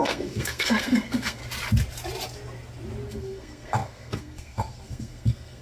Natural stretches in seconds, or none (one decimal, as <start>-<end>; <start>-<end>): 1.4-3.1